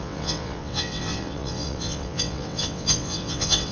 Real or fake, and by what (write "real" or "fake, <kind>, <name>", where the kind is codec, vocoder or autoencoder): fake, vocoder, WaveNeXt